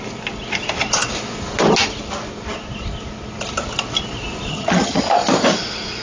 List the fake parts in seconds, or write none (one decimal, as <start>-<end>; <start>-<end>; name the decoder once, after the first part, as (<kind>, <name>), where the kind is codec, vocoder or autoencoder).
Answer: 4.5-5.0 (vocoder, HiFi-GAN)